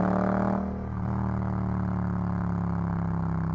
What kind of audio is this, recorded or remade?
recorded